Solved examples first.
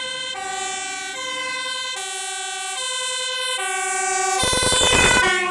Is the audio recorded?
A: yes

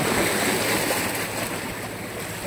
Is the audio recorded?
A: yes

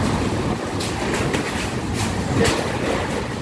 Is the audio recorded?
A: yes